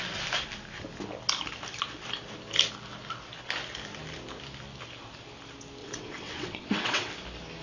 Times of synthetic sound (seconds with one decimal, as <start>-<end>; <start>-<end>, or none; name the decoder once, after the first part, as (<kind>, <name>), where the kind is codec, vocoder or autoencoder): 5.8-7.1 (vocoder, WaveNeXt)